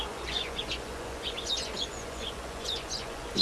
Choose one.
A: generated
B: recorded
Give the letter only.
A